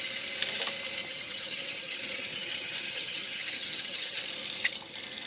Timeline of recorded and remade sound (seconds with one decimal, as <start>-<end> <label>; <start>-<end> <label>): 0.0-1.0 recorded; 1.0-4.2 remade; 4.2-5.3 recorded